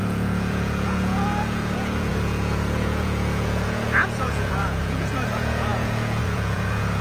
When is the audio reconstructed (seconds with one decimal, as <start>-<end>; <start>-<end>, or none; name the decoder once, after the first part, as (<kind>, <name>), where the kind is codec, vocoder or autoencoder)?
0.0-7.0 (vocoder, Vocos)